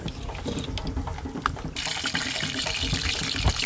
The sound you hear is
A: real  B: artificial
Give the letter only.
A